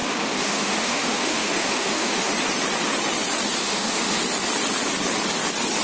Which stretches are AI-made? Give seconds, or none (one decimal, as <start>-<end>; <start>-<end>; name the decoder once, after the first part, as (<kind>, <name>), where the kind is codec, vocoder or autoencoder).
0.0-2.3 (autoencoder, DAC-VAE); 3.6-4.2